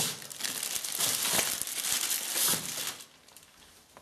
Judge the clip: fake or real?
real